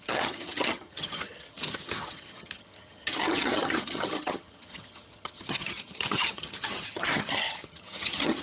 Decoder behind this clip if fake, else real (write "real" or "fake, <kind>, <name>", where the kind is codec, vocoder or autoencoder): fake, vocoder, HiFi-GAN